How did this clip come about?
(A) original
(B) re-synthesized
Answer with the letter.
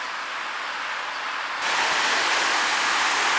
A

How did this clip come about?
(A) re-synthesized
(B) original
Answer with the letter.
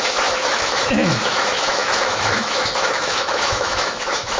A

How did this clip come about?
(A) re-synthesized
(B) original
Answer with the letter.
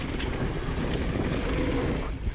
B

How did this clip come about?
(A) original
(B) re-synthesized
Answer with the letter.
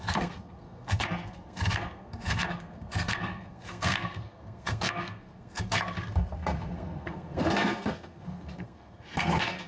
B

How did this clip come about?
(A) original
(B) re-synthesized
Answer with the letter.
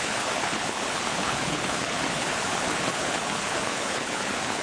B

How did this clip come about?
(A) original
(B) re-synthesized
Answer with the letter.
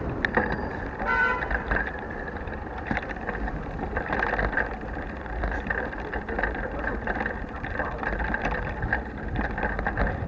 B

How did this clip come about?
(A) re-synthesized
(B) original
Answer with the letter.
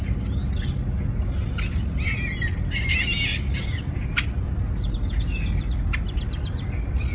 B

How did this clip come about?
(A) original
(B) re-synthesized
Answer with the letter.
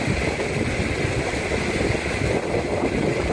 A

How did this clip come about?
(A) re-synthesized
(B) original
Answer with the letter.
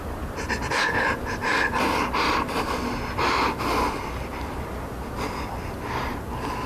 B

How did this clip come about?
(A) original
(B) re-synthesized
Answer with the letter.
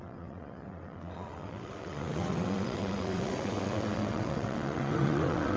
B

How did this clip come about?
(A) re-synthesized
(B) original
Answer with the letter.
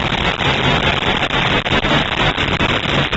B